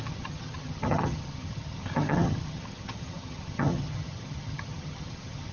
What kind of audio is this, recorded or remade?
remade